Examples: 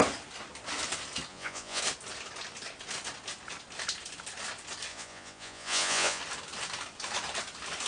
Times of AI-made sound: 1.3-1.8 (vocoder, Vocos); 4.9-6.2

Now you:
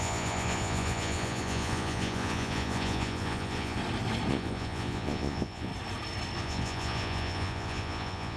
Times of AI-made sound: 0.0-3.8 (vocoder, Vocos); 4.3-5.7; 6.4-8.4